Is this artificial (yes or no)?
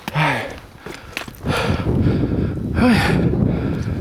no